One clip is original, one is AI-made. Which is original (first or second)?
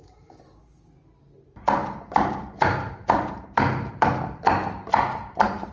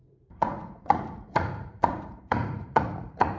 first